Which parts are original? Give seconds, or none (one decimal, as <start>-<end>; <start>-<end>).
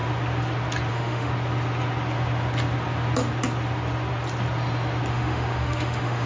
0.0-0.9; 1.3-5.1